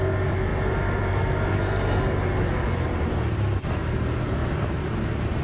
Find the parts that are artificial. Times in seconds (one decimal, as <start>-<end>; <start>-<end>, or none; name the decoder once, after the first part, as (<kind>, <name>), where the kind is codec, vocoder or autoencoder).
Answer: none